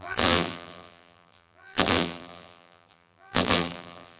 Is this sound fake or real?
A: fake